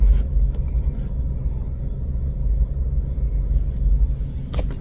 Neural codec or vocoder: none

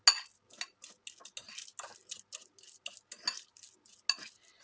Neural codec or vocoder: none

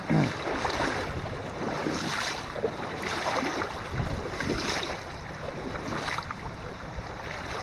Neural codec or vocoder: none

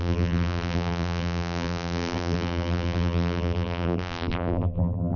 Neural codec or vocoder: vocoder, BigVGAN v2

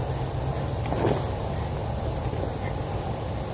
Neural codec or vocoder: none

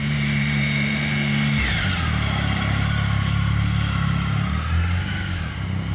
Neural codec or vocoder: none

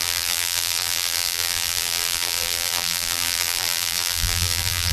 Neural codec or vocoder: vocoder, BigVGAN v2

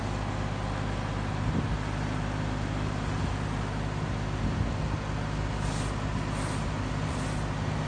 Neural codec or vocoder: none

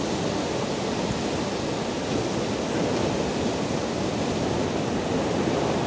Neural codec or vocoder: none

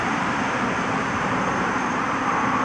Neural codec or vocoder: vocoder, BigVGAN v2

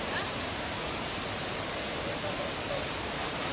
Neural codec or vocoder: vocoder, BigVGAN v2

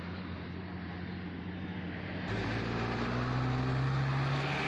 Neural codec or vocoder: none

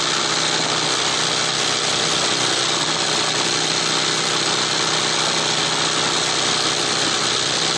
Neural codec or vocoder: none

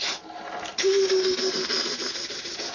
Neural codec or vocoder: none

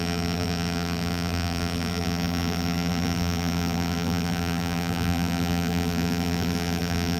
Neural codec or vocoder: vocoder, BigVGAN v2